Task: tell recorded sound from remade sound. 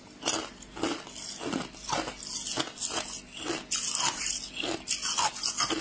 recorded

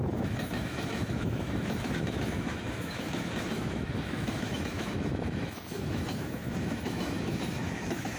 remade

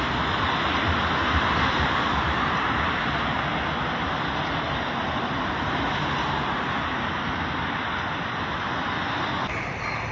recorded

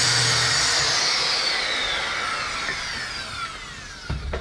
recorded